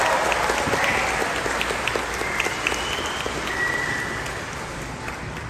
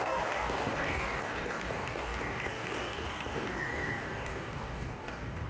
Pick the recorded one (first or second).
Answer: first